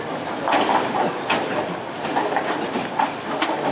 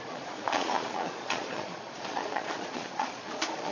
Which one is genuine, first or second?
first